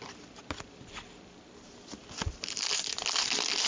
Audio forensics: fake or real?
real